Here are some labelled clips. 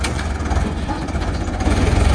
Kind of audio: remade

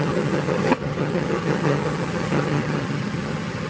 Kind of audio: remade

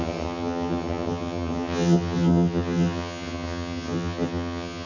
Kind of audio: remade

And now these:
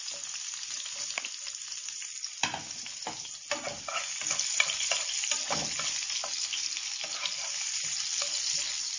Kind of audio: recorded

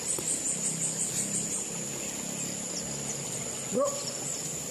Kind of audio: recorded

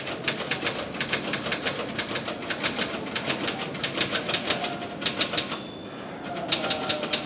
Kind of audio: recorded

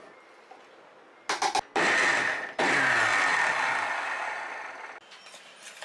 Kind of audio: recorded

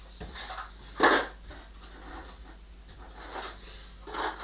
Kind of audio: recorded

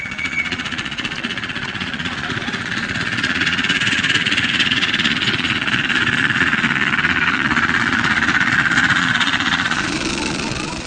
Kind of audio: remade